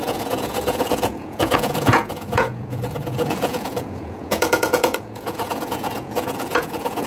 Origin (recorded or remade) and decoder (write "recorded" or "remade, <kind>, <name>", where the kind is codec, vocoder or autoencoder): remade, vocoder, Vocos